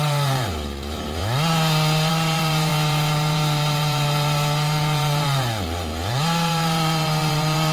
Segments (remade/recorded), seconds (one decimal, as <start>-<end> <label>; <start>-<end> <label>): 0.0-1.2 remade; 1.2-2.1 recorded; 2.1-7.7 remade